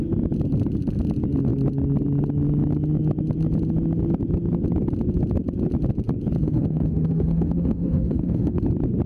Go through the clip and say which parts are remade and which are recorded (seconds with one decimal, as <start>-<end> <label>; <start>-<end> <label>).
0.0-6.4 recorded; 6.4-8.6 remade; 8.6-9.1 recorded